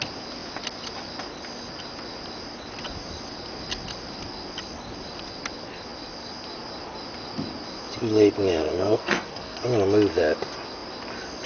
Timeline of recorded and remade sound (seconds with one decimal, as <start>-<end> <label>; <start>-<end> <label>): 0.0-8.6 recorded; 8.6-9.6 remade; 9.6-11.5 recorded